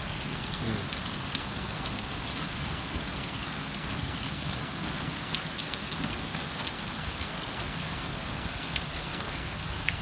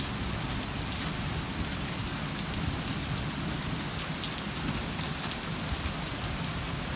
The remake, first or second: first